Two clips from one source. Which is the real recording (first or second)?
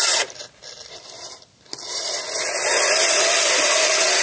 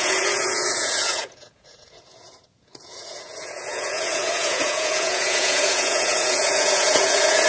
first